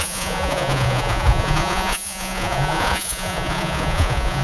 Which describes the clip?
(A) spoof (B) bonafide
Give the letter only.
A